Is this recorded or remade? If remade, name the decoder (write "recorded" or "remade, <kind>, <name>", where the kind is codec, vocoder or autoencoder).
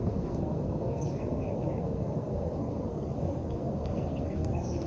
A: remade, codec, SNAC